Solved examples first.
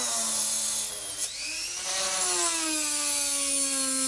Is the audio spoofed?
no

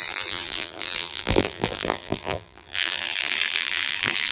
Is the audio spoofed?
yes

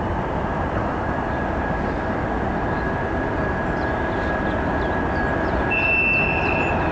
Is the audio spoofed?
no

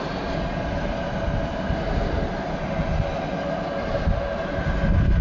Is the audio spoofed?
no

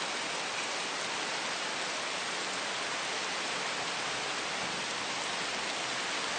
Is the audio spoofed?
no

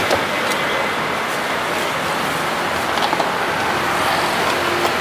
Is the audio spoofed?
no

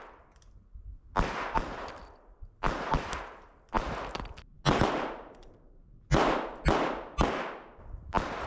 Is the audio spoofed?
no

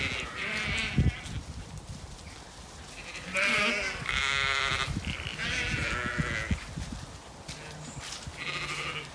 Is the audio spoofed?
no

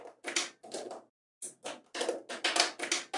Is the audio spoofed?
no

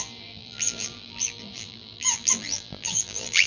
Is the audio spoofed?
yes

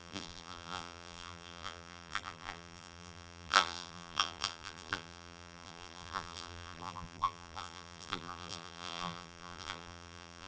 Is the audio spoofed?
yes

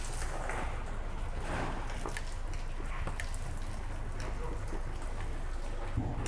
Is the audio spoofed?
no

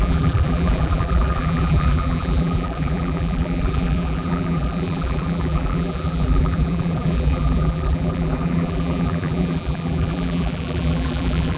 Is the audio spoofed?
yes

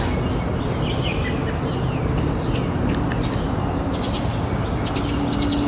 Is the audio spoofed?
no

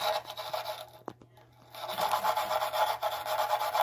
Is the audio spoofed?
no